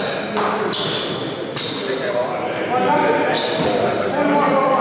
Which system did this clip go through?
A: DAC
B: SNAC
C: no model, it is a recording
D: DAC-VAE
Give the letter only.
C